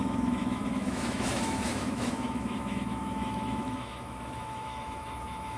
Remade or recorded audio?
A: remade